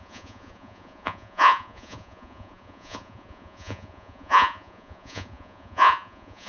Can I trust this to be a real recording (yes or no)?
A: no